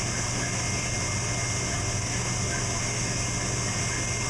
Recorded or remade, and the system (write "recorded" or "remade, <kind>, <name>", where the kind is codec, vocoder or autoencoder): recorded